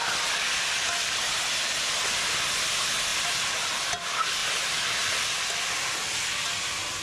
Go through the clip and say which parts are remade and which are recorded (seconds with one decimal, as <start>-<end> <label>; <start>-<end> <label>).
0.0-3.1 recorded; 3.1-3.9 remade; 3.9-4.4 recorded; 4.4-5.3 remade; 5.3-7.0 recorded